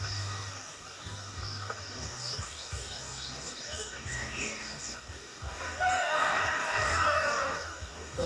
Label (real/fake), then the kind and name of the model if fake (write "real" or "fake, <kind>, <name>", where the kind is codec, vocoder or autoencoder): fake, codec, DAC